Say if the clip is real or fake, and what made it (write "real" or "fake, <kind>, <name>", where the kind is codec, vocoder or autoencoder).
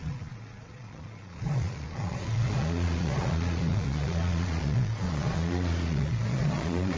fake, vocoder, Vocos